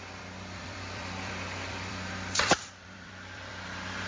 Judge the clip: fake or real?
fake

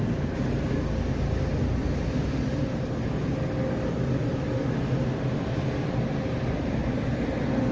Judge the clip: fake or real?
real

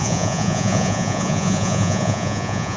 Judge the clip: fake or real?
fake